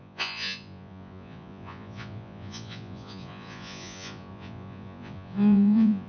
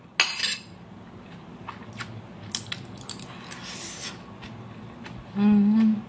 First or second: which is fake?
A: first